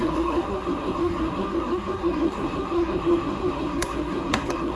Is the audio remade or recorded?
remade